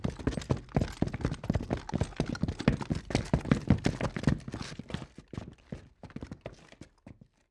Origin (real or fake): real